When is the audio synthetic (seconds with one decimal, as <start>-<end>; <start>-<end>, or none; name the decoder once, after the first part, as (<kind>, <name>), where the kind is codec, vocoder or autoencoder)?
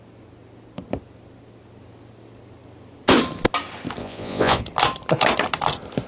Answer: 4.0-4.6 (vocoder, Vocos)